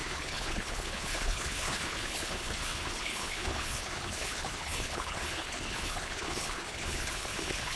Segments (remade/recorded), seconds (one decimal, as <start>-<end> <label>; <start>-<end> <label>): 0.0-7.8 remade